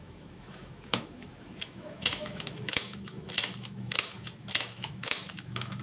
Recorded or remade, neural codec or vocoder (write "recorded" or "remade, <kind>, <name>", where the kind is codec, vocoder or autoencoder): remade, autoencoder, DAC-VAE